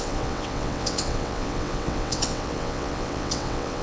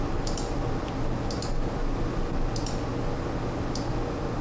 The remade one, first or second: first